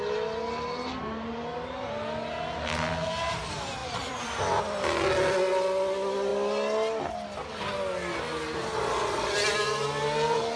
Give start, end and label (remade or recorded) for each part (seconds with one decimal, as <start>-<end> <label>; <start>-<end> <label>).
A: 0.0-3.8 recorded; 3.8-4.6 remade; 4.6-10.6 recorded